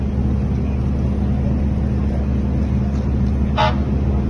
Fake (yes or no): no